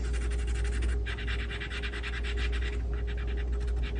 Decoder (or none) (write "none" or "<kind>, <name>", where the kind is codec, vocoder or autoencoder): none